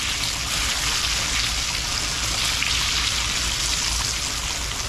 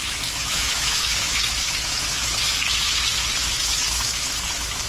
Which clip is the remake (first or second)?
second